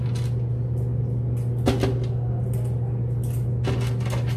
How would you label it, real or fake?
real